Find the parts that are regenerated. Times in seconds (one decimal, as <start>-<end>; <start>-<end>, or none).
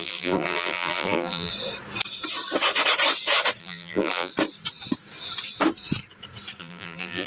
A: 0.0-1.5; 3.6-4.3; 6.6-7.3